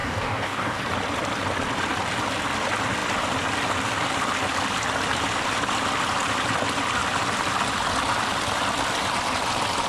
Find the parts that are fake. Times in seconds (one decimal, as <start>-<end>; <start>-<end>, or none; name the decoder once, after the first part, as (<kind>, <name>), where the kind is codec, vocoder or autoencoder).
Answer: 0.0-0.8 (codec, DAC)